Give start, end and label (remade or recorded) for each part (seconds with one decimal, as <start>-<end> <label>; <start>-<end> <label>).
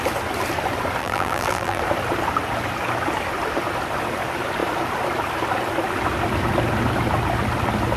0.0-1.0 recorded; 1.0-1.8 remade; 1.8-8.0 recorded